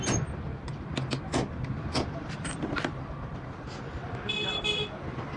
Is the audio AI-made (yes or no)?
no